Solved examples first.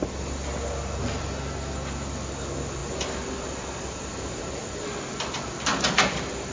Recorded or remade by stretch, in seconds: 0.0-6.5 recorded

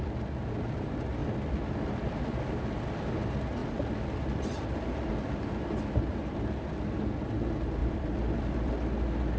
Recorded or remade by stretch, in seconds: 0.0-1.2 recorded; 1.2-2.2 remade; 2.2-3.6 recorded; 3.6-5.1 remade; 5.1-6.1 recorded; 6.1-6.7 remade; 6.7-7.8 recorded; 7.8-8.7 remade; 8.7-9.4 recorded

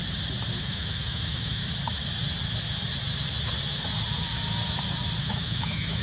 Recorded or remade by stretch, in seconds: 0.0-0.6 recorded; 0.6-1.6 remade; 1.6-5.2 recorded; 5.2-6.0 remade